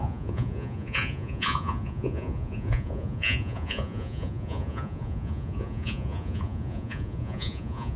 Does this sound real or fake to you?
fake